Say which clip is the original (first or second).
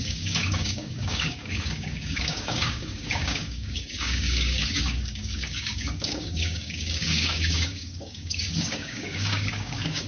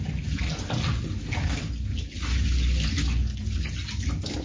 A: second